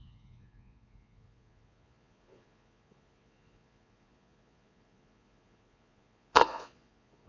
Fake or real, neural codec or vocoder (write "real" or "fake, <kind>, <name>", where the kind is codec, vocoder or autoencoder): fake, vocoder, Vocos